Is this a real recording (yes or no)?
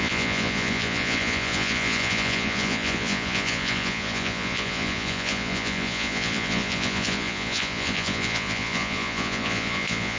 no